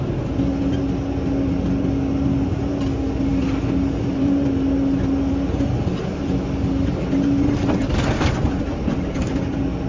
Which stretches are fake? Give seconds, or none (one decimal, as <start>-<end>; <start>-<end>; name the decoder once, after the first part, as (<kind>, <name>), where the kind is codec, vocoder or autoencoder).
none